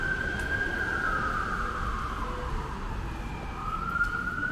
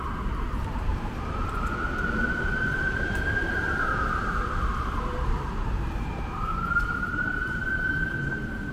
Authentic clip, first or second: first